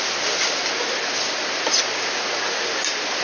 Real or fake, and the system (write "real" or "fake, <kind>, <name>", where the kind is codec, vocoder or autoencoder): real